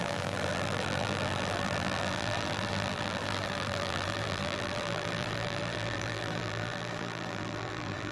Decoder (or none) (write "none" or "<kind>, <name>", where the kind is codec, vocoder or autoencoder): vocoder, BigVGAN v2